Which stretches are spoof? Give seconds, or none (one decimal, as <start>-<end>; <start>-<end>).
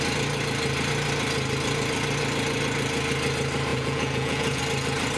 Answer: 3.7-4.6